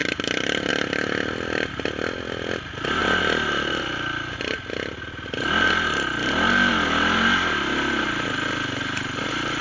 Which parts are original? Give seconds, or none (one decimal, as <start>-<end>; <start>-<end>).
0.7-9.6